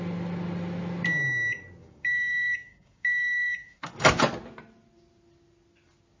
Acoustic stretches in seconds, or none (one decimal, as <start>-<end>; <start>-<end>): 0.0-1.8; 3.8-6.2